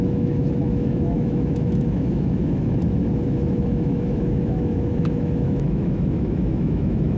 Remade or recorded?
remade